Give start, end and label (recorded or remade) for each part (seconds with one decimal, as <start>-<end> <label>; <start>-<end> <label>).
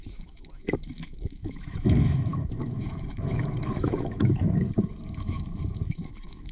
0.0-6.5 remade